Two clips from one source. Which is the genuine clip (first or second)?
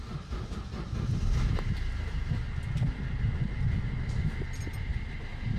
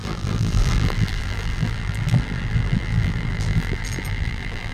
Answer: first